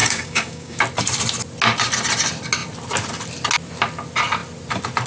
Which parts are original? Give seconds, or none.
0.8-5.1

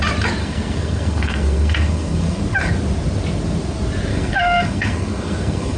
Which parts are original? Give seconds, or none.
0.0-0.4; 2.4-4.1

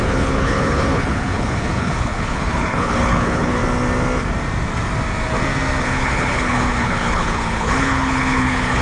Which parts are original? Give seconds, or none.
3.6-5.8